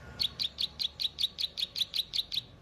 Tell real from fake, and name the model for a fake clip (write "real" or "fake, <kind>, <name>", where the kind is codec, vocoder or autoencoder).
real